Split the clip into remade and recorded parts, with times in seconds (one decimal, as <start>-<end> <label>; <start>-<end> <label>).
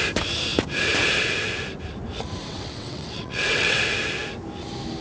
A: 0.0-2.4 recorded; 2.4-3.8 remade; 3.8-5.0 recorded